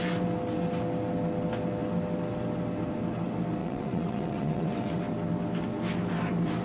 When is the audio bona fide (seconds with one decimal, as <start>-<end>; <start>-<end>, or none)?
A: 0.0-3.6; 5.0-6.6